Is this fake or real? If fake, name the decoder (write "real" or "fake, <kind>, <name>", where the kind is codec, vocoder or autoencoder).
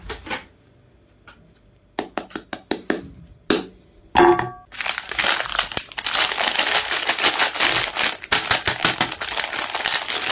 real